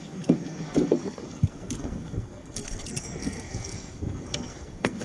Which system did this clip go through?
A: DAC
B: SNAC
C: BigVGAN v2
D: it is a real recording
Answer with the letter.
B